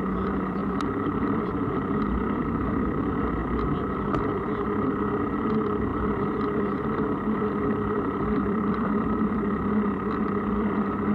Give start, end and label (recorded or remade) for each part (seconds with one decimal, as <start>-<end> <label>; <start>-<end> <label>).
0.0-0.6 recorded; 0.6-1.5 remade; 1.5-5.9 recorded; 5.9-9.7 remade; 9.7-11.1 recorded